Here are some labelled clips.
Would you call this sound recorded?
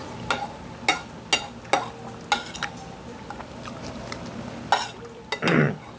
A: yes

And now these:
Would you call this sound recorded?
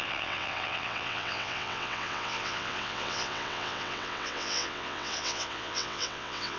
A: no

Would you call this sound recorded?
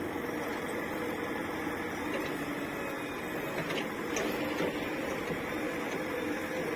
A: yes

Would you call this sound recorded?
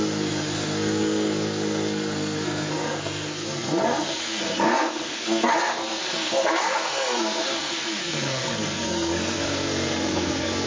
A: no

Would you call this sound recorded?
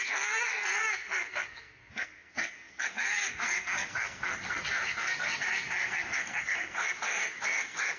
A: no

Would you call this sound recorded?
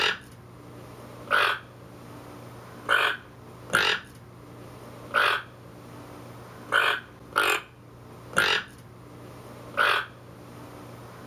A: yes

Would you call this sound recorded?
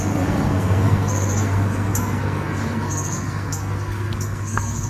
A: no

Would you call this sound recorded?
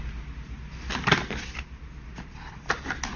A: yes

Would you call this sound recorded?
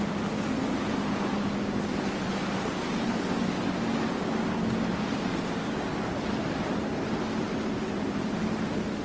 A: yes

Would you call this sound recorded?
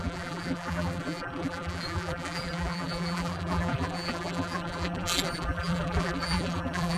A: no